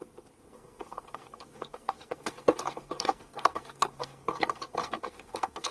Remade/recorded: remade